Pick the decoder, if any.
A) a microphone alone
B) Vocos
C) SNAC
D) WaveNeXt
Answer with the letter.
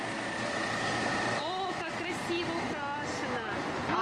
A